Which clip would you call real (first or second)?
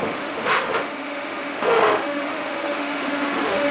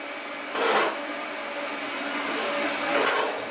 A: second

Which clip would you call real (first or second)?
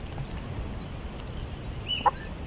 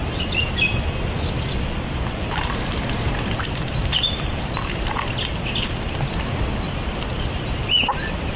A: first